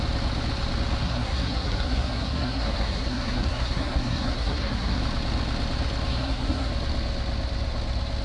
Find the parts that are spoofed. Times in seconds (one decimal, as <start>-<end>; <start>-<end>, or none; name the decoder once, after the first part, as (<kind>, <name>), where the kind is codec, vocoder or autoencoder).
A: 1.0-5.0 (codec, SNAC); 6.1-6.7